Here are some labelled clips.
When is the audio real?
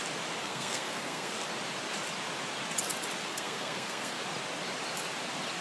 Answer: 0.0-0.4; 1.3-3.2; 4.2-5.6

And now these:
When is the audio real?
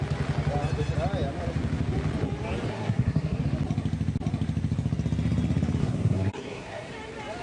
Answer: 0.0-2.7; 3.4-5.8; 6.9-7.4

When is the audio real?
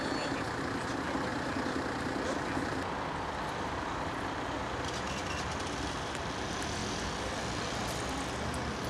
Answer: 0.0-8.9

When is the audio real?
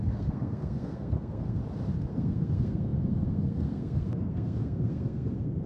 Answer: 1.6-2.1